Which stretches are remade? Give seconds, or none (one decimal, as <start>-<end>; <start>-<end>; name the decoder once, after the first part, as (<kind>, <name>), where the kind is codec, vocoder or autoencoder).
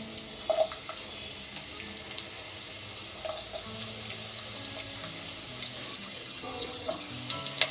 5.9-7.0 (vocoder, HiFi-GAN)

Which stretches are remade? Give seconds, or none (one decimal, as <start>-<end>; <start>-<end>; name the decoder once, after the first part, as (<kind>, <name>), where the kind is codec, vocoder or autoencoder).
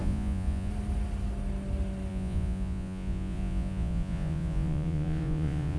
0.0-0.7 (vocoder, Vocos); 2.1-5.8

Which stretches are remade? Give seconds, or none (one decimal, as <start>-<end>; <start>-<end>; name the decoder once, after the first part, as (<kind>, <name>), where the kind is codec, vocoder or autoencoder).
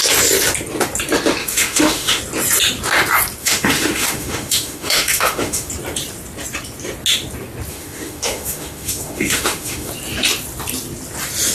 1.4-2.2 (autoencoder, DAC-VAE); 3.4-5.7; 7.7-9.9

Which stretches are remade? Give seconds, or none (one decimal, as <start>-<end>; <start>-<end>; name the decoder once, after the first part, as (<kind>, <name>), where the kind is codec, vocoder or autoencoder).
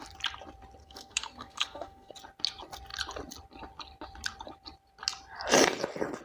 0.8-2.1 (codec, SNAC)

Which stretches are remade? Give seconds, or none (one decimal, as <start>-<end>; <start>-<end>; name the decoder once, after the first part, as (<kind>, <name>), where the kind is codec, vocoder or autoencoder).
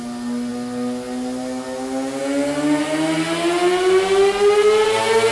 none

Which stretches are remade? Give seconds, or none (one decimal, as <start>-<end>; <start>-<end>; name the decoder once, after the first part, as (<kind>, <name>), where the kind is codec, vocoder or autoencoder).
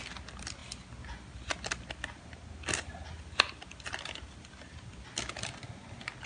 none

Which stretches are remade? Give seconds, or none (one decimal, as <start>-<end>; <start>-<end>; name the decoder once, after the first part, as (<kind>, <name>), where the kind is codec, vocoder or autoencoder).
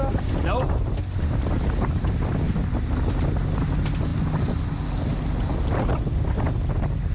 none